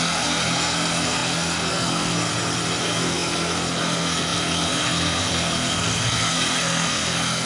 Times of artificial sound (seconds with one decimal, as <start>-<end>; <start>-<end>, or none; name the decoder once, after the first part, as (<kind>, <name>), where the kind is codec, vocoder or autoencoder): 0.0-2.3 (codec, SNAC); 2.8-7.5